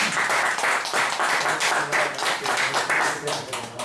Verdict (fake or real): real